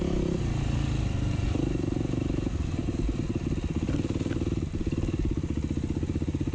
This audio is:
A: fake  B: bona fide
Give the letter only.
B